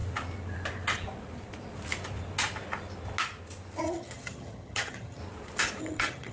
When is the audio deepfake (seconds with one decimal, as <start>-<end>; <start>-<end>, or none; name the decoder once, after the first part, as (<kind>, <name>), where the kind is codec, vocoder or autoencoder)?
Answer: 3.8-5.2 (vocoder, HiFi-GAN); 5.8-6.3